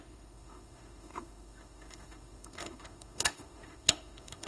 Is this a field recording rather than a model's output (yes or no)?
no